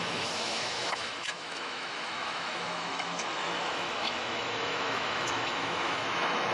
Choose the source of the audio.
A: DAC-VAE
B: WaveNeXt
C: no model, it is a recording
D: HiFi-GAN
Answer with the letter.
A